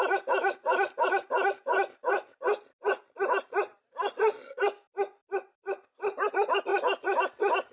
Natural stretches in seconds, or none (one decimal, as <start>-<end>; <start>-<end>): 0.0-7.7